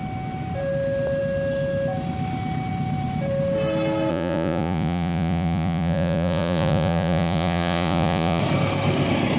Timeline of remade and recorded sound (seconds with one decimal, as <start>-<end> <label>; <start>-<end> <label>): 0.0-4.1 recorded; 4.1-8.4 remade; 8.4-9.4 recorded